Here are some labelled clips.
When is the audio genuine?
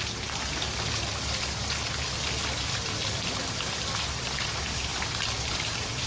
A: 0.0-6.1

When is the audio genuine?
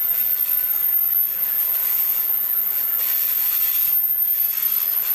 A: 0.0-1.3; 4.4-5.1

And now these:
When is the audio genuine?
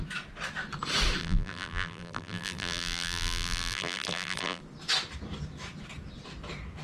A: 0.0-1.2; 4.6-6.8